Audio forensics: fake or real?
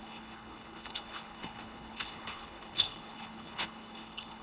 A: fake